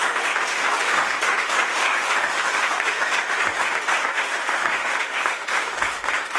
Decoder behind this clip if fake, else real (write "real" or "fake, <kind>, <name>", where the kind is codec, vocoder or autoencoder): fake, autoencoder, DAC-VAE